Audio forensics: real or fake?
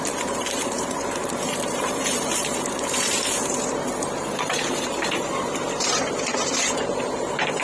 fake